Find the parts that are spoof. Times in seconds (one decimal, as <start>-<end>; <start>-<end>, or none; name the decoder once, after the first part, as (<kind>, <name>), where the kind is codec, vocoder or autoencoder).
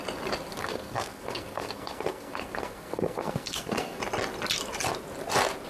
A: 0.6-4.0 (codec, SNAC)